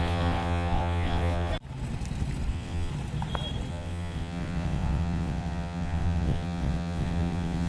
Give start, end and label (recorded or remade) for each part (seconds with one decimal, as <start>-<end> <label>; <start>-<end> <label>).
0.0-1.5 remade; 1.5-2.5 recorded; 2.5-2.9 remade; 2.9-3.7 recorded; 3.7-7.7 remade